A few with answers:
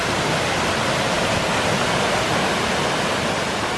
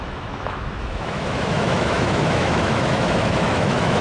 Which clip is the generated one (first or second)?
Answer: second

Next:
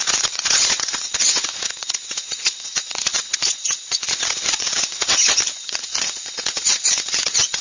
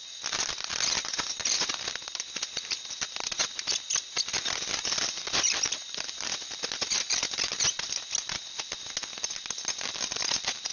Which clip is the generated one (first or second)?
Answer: first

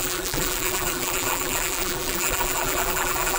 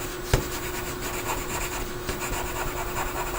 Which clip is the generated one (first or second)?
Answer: first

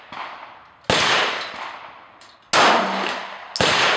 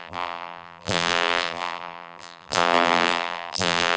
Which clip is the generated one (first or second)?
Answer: second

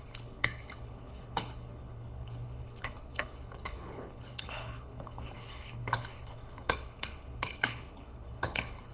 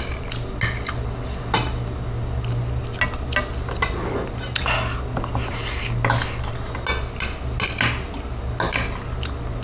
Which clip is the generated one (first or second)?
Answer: first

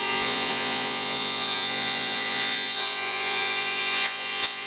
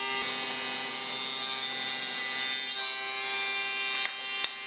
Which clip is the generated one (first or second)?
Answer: first